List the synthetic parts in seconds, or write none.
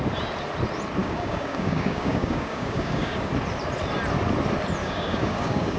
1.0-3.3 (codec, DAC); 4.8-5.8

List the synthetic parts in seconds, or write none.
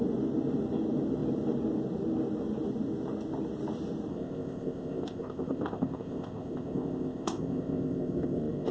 4.1-8.7 (codec, ZipCodec)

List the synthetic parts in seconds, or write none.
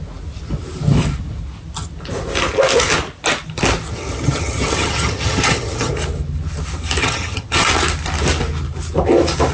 3.9-5.9 (vocoder, HiFi-GAN); 7.0-7.7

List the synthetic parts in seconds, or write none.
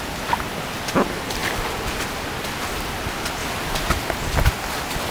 1.4-2.6 (vocoder, BigVGAN v2); 3.4-3.9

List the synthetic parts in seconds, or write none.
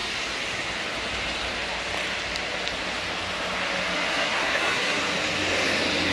4.1-5.0 (codec, SNAC)